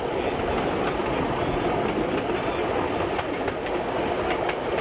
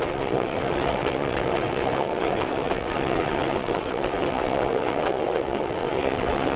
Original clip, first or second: first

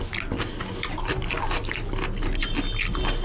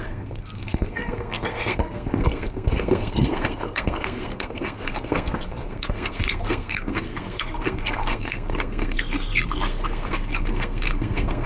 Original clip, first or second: first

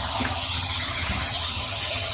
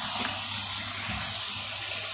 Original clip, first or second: second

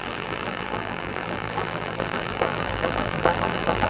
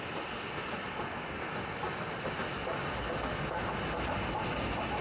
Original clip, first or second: second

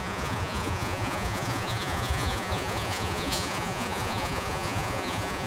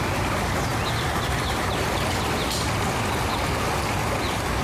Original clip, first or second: second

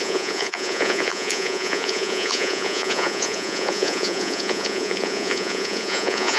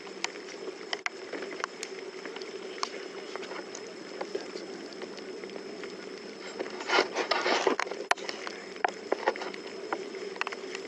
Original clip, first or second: second